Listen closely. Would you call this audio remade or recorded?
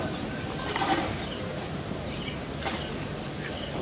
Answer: recorded